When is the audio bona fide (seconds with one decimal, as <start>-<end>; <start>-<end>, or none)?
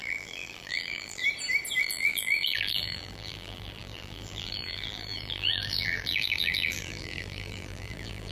1.2-1.8